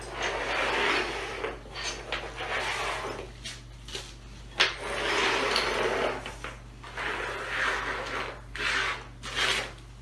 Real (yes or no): yes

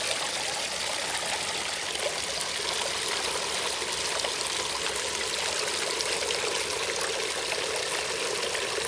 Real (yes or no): yes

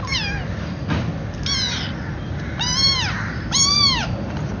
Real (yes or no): yes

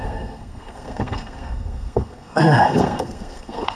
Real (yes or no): no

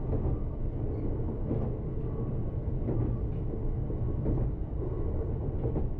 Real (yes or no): yes